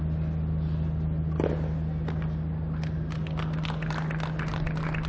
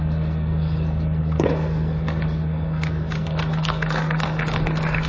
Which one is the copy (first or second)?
second